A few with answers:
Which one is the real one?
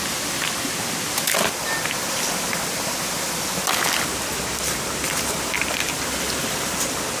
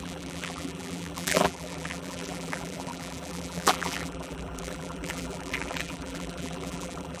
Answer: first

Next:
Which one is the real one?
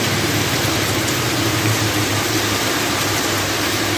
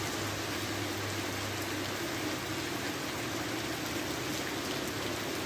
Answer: second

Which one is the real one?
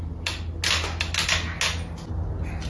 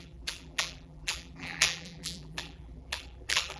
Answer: first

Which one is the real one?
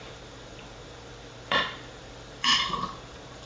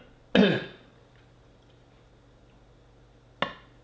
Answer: second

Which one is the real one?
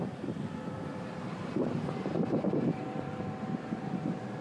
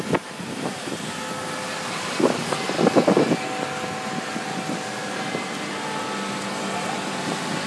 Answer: second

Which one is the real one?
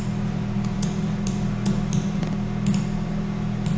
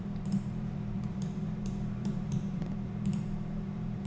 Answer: first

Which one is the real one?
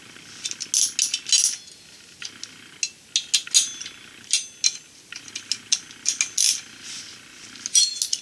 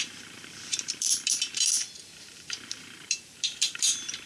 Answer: first